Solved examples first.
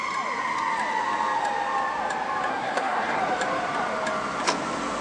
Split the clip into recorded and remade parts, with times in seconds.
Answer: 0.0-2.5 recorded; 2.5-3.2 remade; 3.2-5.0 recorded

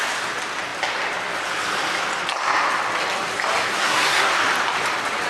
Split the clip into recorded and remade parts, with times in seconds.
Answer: 0.0-3.7 recorded; 3.7-4.3 remade; 4.3-5.3 recorded